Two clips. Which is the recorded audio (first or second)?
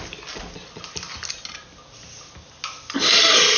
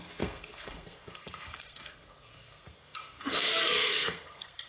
first